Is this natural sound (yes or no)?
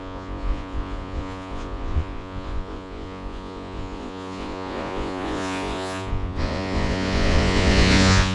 no